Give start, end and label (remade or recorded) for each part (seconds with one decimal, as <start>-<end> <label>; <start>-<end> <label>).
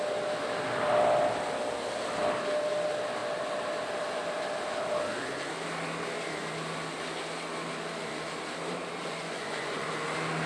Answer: 0.0-9.0 recorded; 9.0-9.9 remade; 9.9-10.5 recorded